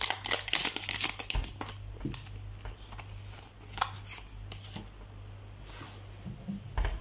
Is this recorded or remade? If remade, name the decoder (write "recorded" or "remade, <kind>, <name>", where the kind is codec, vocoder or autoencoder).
recorded